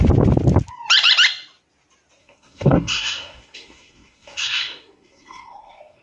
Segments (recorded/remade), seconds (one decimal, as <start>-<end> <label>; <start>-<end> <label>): 0.0-2.2 recorded; 2.2-6.0 remade